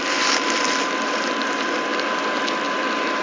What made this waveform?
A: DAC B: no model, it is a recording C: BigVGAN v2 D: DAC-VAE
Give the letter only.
C